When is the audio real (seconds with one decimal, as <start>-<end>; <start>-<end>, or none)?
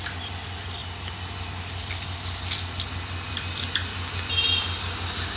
0.0-5.4